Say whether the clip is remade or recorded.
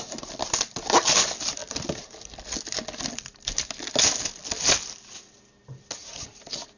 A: recorded